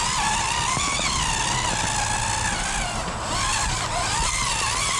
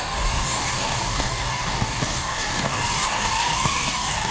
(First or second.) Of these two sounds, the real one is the first